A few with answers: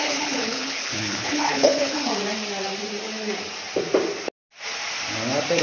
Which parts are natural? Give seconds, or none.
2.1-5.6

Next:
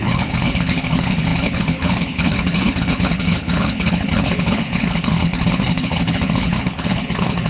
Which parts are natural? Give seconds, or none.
none

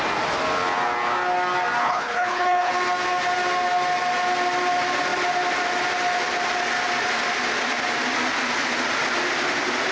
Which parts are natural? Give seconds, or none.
0.0-1.8; 2.7-9.9

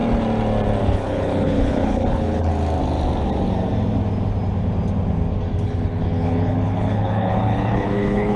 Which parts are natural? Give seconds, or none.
0.0-0.8; 2.5-5.6